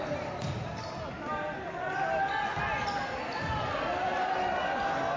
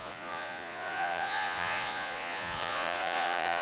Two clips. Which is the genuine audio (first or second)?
first